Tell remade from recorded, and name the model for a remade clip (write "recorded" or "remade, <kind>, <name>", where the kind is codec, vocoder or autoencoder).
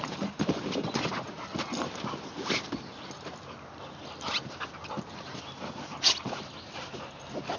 recorded